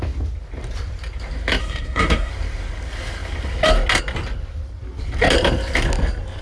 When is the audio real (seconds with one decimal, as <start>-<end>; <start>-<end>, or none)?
0.0-1.6; 2.3-6.4